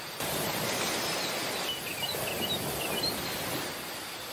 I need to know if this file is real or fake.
real